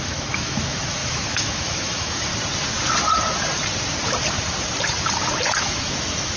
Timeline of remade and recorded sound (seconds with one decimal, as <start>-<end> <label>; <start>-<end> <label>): 0.0-2.3 remade; 2.3-5.6 recorded; 5.6-6.4 remade